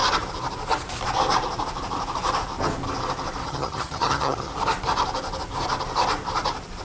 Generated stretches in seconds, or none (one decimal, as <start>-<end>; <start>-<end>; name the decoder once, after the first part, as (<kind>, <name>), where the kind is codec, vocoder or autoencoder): 3.4-4.5 (vocoder, HiFi-GAN)